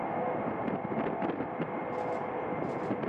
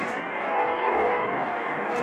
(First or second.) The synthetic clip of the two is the second